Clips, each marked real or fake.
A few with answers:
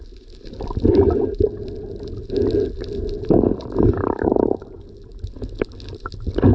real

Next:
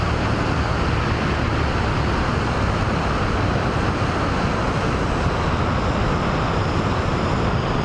real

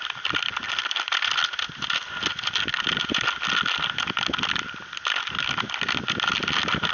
real